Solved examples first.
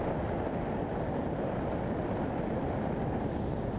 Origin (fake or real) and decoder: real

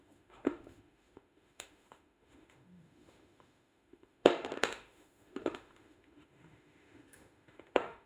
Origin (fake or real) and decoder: fake, autoencoder, DAC-VAE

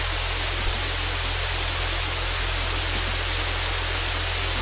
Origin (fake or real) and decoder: real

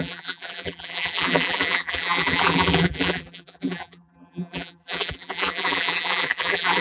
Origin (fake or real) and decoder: fake, vocoder, BigVGAN v2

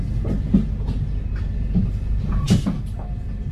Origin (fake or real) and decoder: real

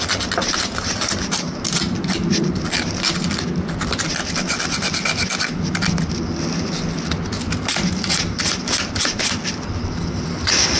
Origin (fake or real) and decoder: real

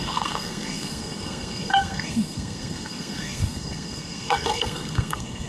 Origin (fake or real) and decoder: fake, codec, SNAC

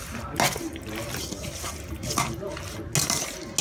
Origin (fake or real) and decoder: real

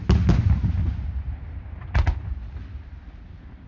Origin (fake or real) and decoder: real